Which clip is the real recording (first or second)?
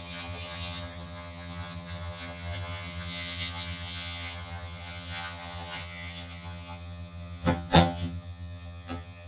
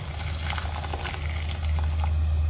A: second